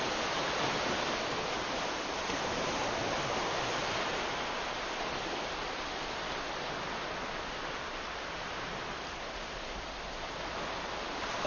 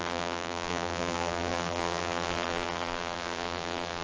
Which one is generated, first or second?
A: second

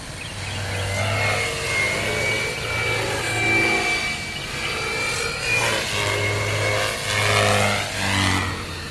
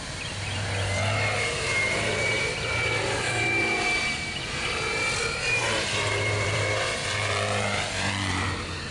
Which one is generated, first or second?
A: second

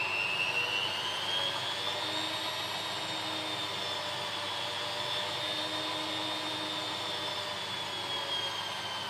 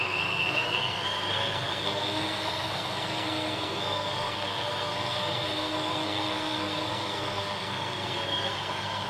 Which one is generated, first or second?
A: second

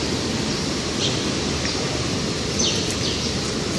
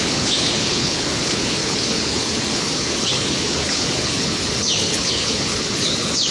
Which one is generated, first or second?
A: second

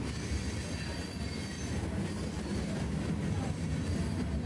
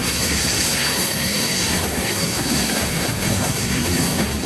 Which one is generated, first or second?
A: second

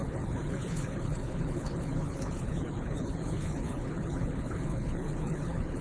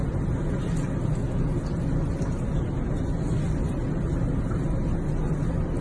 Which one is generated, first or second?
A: first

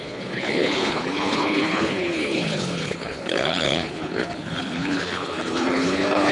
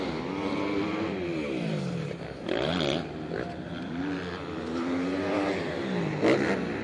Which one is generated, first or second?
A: first